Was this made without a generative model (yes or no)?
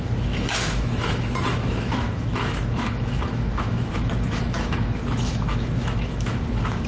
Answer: no